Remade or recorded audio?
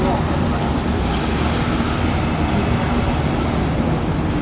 recorded